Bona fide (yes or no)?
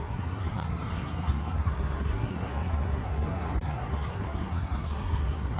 no